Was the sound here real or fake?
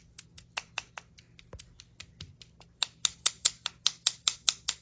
real